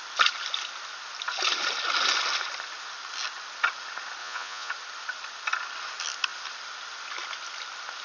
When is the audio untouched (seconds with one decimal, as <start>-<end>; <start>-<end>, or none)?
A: 0.0-4.2; 4.7-8.0